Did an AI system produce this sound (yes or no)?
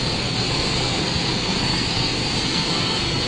yes